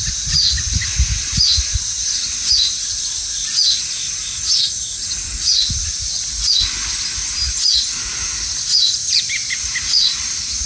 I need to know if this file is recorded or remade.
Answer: recorded